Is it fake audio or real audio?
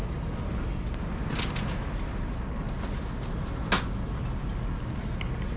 real